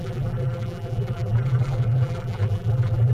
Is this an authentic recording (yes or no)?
no